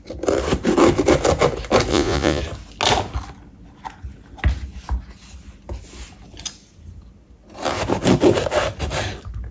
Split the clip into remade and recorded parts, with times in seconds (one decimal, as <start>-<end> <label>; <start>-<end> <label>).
0.0-1.9 recorded; 1.9-2.4 remade; 2.4-9.5 recorded

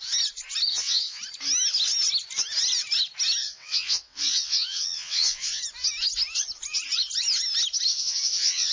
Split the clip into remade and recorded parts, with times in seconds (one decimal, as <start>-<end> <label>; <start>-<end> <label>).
0.0-0.7 recorded; 0.7-1.2 remade; 1.2-3.4 recorded; 3.4-5.6 remade; 5.6-7.9 recorded; 7.9-8.7 remade

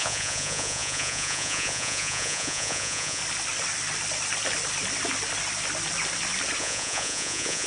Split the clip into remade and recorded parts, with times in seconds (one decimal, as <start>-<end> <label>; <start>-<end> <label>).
0.0-3.2 remade; 3.2-6.6 recorded; 6.6-7.7 remade

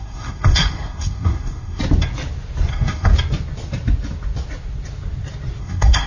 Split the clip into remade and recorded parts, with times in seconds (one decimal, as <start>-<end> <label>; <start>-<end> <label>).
0.0-1.8 remade; 1.8-2.7 recorded; 2.7-3.1 remade; 3.1-5.6 recorded; 5.6-6.1 remade